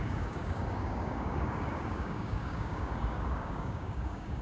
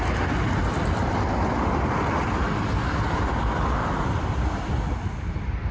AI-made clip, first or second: first